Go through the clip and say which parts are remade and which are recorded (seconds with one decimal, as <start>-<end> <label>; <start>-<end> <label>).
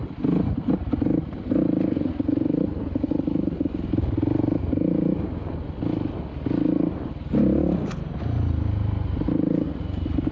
0.0-10.3 recorded